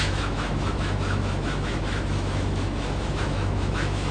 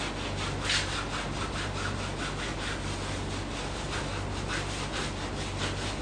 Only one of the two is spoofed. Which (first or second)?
first